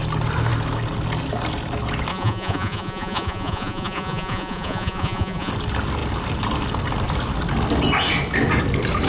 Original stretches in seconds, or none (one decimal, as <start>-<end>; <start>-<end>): 0.0-2.1; 5.5-9.1